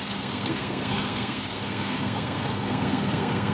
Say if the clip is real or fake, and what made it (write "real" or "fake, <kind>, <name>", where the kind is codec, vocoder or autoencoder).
fake, codec, SNAC